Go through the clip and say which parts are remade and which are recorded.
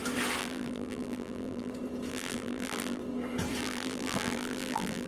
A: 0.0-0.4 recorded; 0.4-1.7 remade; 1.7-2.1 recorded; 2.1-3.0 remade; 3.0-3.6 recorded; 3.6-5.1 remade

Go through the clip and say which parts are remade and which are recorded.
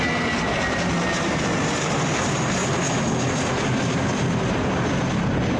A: 0.0-5.6 recorded